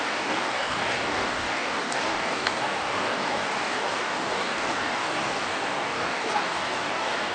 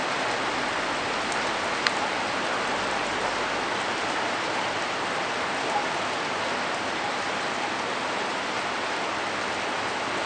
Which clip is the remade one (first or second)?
first